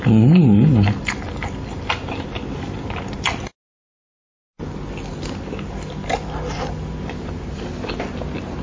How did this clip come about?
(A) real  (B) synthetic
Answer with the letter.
A